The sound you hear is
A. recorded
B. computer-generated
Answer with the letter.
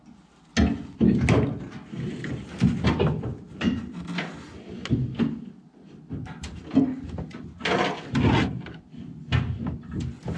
A